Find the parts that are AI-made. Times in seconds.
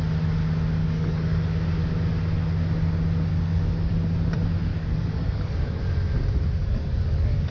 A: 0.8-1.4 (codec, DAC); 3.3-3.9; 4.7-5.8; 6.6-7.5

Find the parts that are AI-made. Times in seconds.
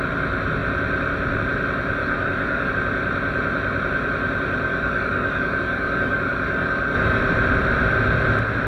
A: 2.0-2.7 (codec, DAC); 4.7-7.2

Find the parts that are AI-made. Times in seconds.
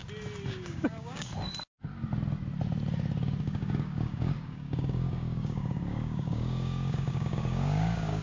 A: 0.5-1.3 (codec, DAC); 3.4-8.2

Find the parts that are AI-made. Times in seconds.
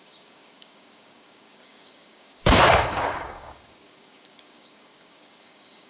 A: 0.0-5.9 (codec, DAC)